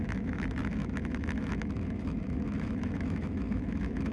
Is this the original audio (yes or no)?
no